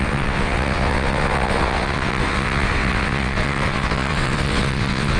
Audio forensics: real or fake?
fake